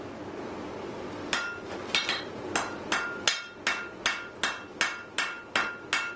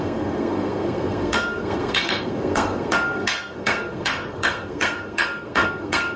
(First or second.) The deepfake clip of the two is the second